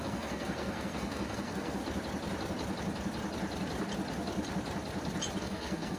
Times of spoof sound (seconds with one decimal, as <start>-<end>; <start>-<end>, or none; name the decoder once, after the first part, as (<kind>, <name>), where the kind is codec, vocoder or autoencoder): 0.0-1.8 (codec, SNAC); 5.4-6.0